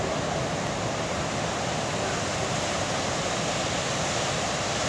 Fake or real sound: real